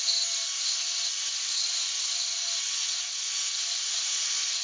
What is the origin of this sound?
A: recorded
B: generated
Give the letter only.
A